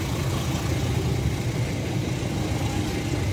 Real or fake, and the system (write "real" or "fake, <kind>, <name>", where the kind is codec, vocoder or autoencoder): real